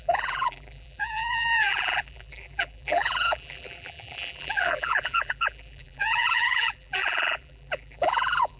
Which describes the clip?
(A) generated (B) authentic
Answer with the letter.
A